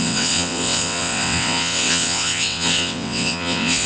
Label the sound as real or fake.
fake